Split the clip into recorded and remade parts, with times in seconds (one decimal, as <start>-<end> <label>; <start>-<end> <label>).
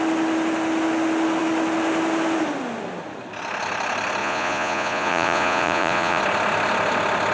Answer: 0.0-4.2 recorded; 4.2-6.2 remade; 6.2-7.3 recorded